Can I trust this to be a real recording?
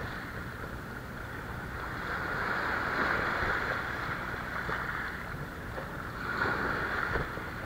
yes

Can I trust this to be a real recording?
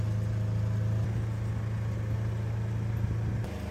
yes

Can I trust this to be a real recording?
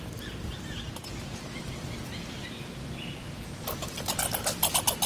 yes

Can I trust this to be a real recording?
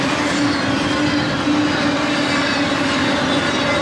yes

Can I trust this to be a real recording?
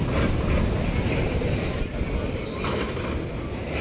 yes